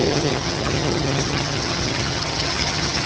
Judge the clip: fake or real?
fake